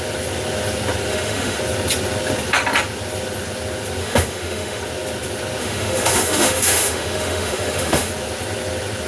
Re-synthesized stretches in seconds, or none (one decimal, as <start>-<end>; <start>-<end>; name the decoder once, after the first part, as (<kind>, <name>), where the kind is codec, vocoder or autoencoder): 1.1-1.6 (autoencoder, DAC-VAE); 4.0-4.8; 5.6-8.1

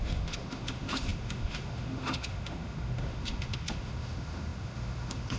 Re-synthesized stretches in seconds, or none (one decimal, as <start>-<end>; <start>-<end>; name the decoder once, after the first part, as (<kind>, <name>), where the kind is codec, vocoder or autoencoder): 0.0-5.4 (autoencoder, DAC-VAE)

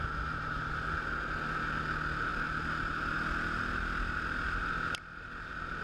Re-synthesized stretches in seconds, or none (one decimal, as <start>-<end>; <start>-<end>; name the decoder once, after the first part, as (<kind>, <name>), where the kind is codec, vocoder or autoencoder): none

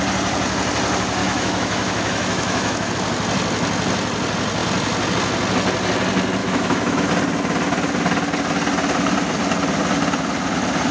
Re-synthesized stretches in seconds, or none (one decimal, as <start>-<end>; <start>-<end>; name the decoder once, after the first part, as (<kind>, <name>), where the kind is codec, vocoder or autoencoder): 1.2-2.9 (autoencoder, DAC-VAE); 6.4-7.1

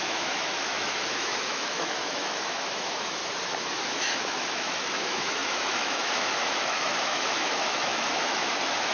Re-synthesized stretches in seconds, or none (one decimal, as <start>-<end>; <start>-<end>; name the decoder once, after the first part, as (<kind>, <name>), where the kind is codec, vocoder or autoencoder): 0.0-3.2 (autoencoder, DAC-VAE); 3.8-8.9

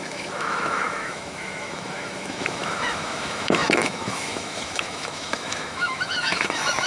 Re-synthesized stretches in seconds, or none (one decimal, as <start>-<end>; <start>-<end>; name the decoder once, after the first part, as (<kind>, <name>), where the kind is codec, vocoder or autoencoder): 0.0-6.9 (autoencoder, DAC-VAE)